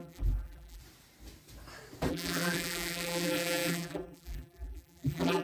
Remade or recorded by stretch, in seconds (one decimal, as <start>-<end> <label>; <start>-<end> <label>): 0.0-0.8 remade; 0.8-2.1 recorded; 2.1-5.4 remade